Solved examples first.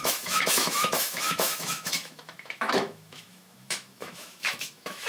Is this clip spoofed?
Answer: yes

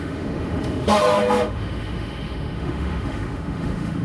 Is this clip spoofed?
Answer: yes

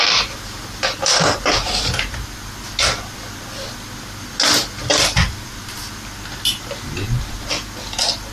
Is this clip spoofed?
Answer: no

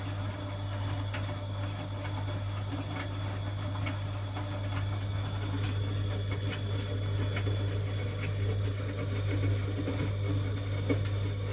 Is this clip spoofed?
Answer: no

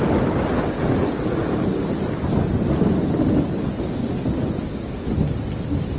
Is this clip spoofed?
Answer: no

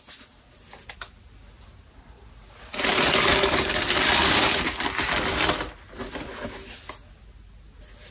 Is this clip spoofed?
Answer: no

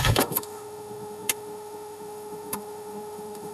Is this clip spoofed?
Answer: yes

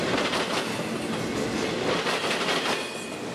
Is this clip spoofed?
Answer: no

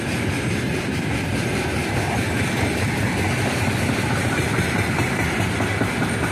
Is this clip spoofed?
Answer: no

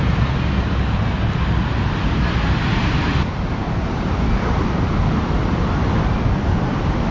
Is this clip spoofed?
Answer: no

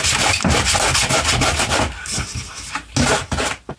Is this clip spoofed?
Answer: no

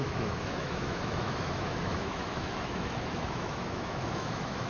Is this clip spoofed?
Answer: yes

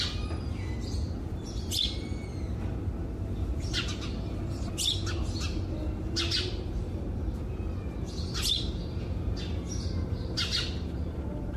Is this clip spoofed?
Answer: no